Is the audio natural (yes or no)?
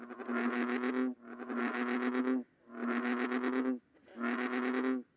yes